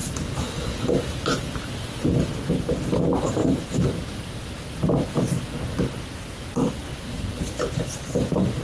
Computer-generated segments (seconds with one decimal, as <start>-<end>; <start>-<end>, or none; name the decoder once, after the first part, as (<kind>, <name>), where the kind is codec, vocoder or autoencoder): 3.4-5.6 (vocoder, BigVGAN v2); 6.9-8.6

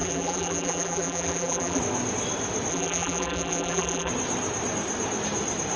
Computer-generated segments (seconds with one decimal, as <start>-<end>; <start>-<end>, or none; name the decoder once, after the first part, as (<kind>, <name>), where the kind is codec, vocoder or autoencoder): 0.0-1.8 (vocoder, BigVGAN v2); 2.7-4.1

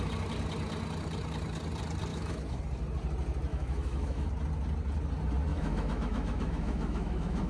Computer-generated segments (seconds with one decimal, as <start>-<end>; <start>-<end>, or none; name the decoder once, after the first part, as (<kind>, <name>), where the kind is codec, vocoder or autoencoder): 2.1-2.6 (autoencoder, DAC-VAE); 3.5-4.3; 5.5-7.5

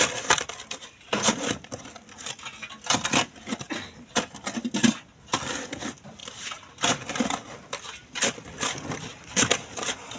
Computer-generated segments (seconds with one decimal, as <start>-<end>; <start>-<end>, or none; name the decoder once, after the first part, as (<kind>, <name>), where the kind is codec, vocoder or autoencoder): 6.2-6.8 (vocoder, BigVGAN v2)

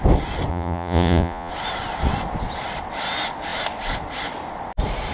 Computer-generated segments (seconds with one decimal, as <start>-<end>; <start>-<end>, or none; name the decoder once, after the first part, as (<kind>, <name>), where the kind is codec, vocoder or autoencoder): 0.5-1.5 (vocoder, Vocos)

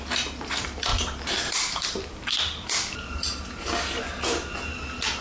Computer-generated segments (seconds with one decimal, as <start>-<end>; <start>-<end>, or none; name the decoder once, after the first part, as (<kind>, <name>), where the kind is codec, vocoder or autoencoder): none

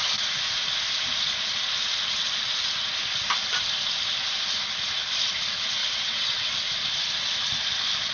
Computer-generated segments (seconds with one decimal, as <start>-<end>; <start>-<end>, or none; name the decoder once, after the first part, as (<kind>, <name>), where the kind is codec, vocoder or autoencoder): 5.8-6.5 (vocoder, WaveNeXt)